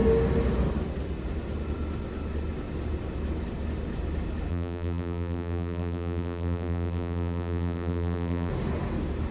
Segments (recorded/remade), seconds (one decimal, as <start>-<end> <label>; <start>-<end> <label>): 0.0-4.5 recorded; 4.5-8.5 remade; 8.5-9.3 recorded